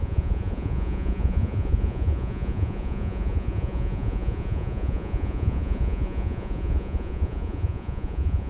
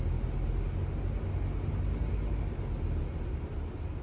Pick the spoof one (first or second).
first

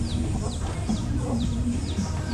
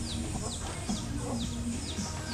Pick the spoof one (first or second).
first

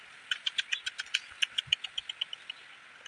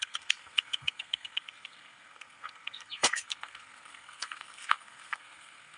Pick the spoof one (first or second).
second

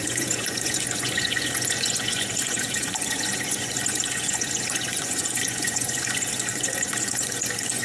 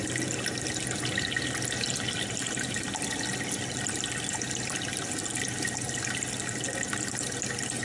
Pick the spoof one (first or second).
first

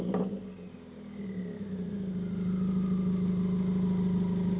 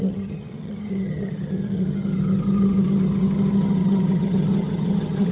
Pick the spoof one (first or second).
second